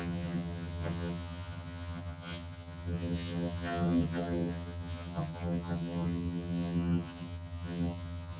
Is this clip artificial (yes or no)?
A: yes